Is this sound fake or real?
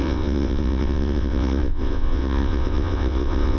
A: fake